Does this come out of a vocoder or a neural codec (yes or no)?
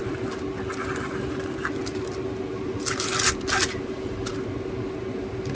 no